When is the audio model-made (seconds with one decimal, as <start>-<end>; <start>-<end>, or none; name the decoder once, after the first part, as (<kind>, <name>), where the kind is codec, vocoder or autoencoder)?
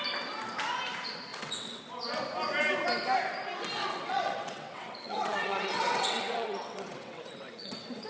1.3-1.8 (vocoder, WaveNeXt); 3.8-8.1